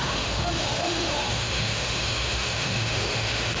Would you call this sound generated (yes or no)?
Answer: yes